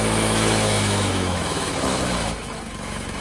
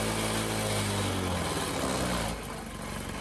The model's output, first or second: first